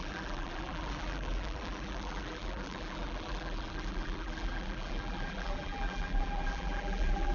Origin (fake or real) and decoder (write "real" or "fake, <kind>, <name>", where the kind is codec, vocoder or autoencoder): fake, vocoder, BigVGAN v2